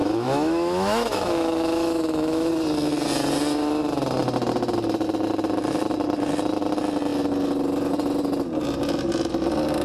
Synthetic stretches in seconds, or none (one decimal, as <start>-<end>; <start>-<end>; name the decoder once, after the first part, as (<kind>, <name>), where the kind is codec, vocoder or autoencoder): 0.0-2.5 (autoencoder, DAC-VAE)